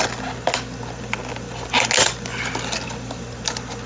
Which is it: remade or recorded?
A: recorded